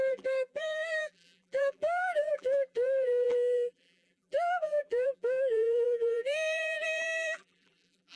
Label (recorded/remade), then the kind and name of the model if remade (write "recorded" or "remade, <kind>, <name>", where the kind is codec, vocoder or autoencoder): remade, vocoder, BigVGAN v2